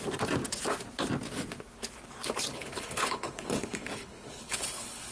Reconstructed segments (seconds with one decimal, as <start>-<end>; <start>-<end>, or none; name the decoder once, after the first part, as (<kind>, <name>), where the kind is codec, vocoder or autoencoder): 2.5-5.1 (codec, HILCodec)